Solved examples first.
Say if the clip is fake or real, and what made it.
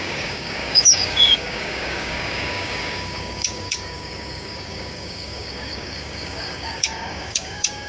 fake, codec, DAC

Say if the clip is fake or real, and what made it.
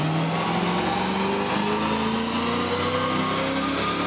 real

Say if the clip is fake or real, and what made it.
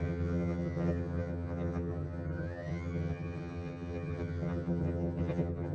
fake, vocoder, HiFi-GAN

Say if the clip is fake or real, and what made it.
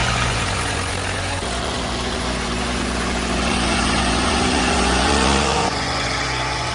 fake, vocoder, Vocos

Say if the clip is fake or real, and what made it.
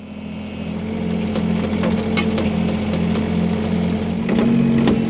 real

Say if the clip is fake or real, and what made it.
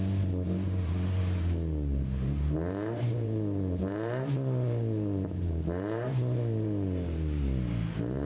fake, vocoder, BigVGAN v2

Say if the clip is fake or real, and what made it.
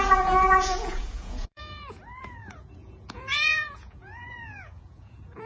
fake, vocoder, Vocos